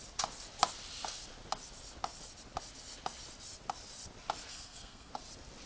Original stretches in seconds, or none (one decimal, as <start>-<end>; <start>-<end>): 0.0-4.5; 5.1-5.7